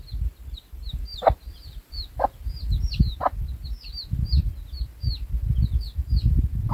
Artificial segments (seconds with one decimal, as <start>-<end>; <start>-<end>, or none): 1.1-3.0